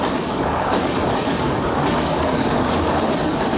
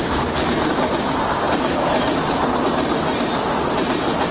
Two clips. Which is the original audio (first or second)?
second